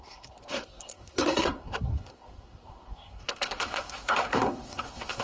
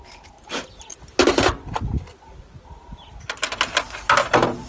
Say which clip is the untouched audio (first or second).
second